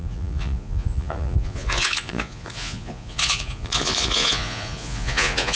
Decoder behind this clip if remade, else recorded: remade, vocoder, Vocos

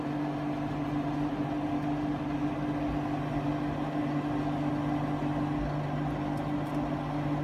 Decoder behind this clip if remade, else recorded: recorded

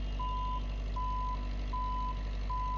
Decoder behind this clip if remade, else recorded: recorded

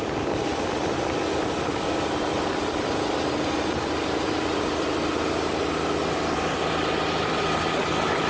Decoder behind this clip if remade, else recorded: recorded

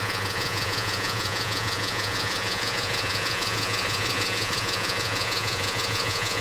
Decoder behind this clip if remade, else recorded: remade, vocoder, Vocos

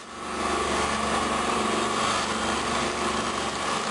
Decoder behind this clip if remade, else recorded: recorded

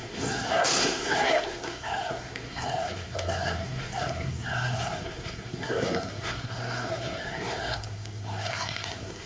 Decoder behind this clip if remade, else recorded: remade, codec, SNAC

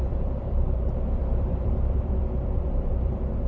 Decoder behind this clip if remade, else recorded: remade, vocoder, BigVGAN v2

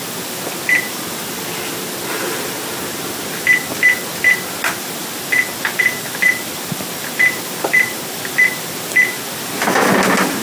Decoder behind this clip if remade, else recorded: recorded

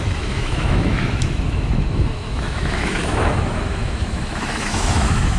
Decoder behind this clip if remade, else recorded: remade, autoencoder, DAC-VAE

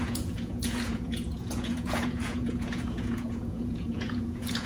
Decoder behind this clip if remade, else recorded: remade, vocoder, Vocos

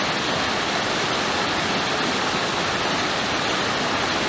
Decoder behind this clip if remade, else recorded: recorded